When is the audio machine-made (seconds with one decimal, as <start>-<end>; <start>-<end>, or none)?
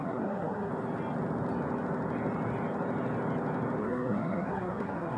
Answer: 0.0-0.7; 3.8-5.2